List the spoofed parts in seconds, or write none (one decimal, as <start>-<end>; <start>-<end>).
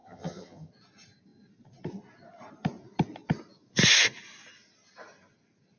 0.0-0.7